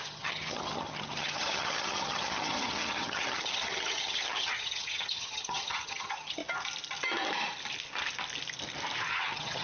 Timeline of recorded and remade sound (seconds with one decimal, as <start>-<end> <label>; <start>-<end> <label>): 0.0-6.4 remade; 6.4-9.1 recorded; 9.1-9.6 remade